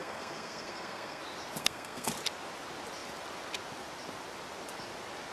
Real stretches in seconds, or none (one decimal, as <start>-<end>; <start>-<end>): 1.2-1.6; 2.1-5.3